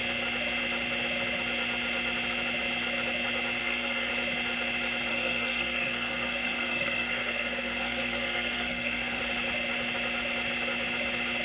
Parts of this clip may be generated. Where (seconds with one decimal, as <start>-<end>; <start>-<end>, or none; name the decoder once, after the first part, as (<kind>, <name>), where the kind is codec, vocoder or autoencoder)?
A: 3.6-4.1 (codec, SNAC); 5.1-9.2